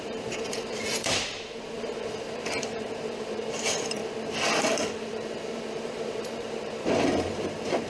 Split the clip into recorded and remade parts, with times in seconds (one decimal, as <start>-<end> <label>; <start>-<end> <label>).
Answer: 0.0-4.0 remade; 4.0-4.6 recorded; 4.6-7.9 remade